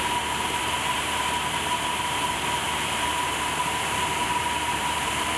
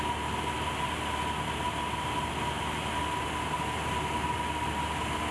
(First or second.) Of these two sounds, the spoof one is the first